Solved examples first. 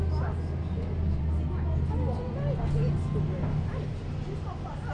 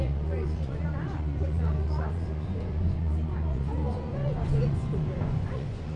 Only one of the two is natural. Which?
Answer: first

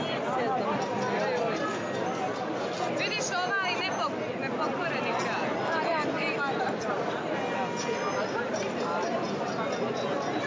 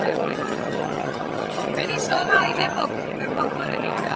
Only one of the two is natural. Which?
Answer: first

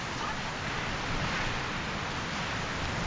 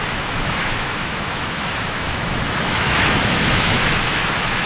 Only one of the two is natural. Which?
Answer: first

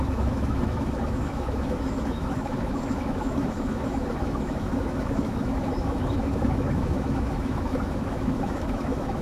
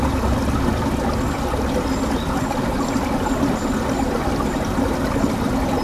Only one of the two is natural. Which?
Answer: second